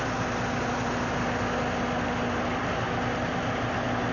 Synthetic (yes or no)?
no